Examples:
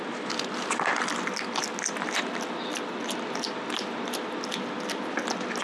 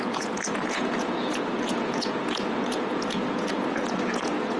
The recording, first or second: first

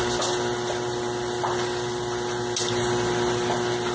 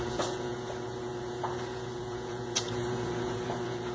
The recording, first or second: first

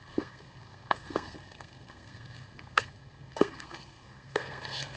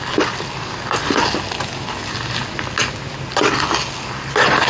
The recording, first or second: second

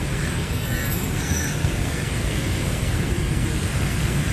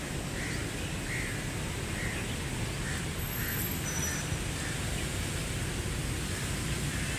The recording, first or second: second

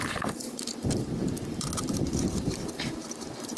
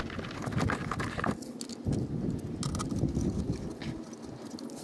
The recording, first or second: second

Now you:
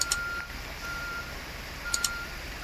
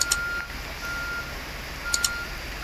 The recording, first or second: second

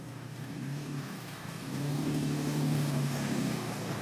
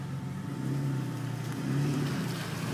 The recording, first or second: second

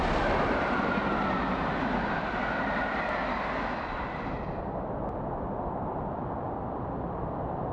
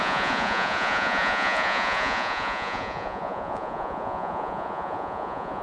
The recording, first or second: first